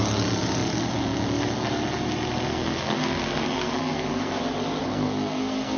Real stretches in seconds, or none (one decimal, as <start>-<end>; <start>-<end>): 0.0-2.5; 4.4-4.9